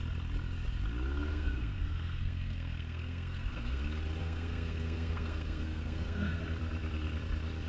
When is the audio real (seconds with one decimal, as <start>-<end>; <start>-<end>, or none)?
0.0-1.3; 3.8-4.2; 6.4-7.7